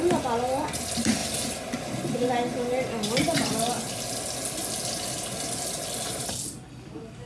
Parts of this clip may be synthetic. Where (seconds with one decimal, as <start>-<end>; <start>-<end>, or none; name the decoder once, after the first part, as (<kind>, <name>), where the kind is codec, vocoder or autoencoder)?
none